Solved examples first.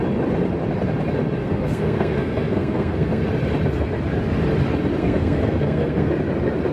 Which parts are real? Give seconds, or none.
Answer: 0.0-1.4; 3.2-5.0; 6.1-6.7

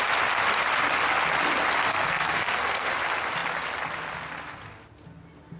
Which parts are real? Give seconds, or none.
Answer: 0.0-1.9; 2.9-5.6

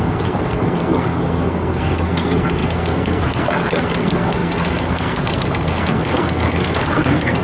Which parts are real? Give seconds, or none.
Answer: none

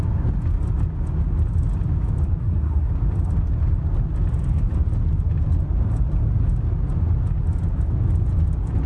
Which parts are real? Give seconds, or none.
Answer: 0.0-2.4; 2.9-8.9

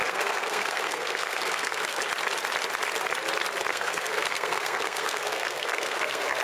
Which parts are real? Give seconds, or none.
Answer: 2.0-3.7

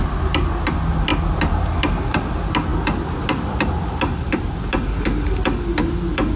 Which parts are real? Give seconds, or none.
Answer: 0.0-6.4

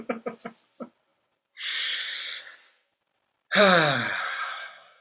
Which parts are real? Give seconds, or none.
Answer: 0.0-4.2